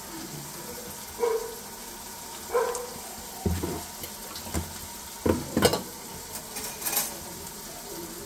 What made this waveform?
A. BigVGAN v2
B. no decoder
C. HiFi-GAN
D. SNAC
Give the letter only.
B